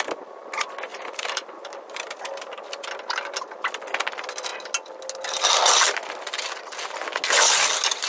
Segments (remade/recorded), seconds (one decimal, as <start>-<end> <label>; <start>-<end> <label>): 0.0-0.9 recorded; 0.9-2.2 remade; 2.2-8.1 recorded